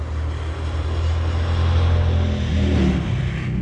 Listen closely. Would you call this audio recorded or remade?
recorded